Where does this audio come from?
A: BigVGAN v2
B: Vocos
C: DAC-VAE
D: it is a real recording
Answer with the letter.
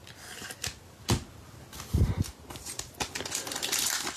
D